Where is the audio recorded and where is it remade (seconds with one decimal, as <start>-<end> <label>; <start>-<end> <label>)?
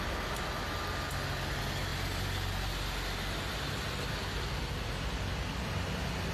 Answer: 0.0-6.3 recorded